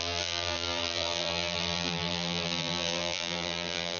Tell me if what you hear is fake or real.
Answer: fake